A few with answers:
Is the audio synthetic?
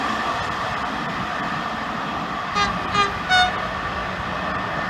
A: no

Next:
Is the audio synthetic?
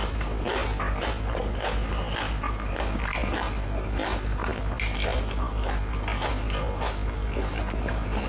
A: no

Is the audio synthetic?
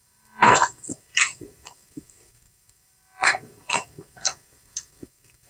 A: yes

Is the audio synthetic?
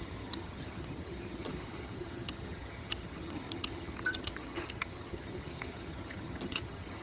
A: yes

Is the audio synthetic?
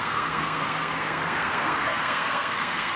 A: yes